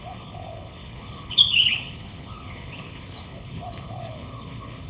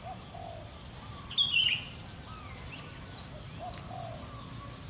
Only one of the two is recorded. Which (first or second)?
second